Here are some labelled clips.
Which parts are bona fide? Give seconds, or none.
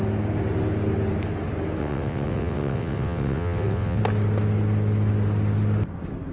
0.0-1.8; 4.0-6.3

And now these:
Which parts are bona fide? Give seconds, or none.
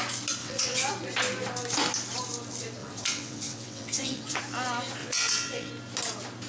0.0-0.4; 0.9-2.8; 4.4-5.0; 5.7-6.5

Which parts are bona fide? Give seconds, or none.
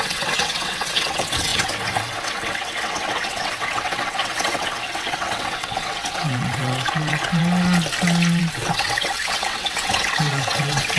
7.4-8.4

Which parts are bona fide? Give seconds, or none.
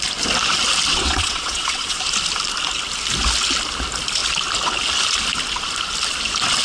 0.0-0.9; 2.0-6.6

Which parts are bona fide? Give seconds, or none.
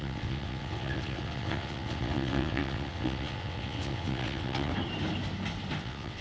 4.7-5.8